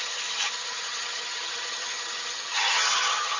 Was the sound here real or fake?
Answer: fake